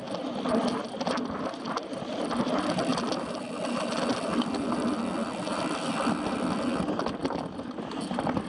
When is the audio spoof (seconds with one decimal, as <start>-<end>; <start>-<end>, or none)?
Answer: none